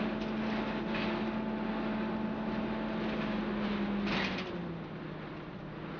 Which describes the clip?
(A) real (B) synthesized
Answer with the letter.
A